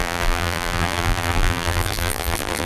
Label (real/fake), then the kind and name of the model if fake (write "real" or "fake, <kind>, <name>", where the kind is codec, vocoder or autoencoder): fake, vocoder, BigVGAN v2